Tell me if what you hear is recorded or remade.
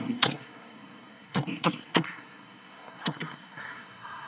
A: remade